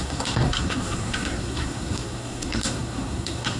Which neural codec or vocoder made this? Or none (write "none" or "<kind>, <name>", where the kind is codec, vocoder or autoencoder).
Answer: codec, SNAC